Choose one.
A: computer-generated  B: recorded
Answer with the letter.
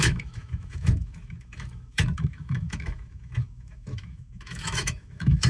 A